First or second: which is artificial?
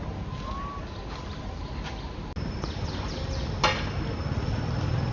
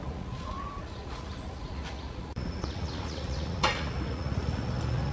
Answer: second